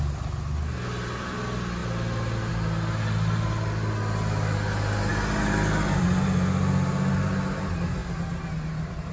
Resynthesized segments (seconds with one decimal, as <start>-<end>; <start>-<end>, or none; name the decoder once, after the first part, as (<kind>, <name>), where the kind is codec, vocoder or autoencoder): none